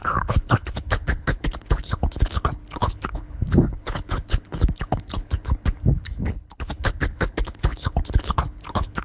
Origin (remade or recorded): remade